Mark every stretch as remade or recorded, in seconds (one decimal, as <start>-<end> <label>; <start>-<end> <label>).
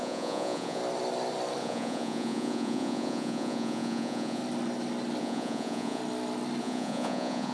0.0-0.8 remade; 0.8-1.6 recorded; 1.6-4.4 remade; 4.4-5.2 recorded; 5.2-6.0 remade; 6.0-6.6 recorded; 6.6-7.5 remade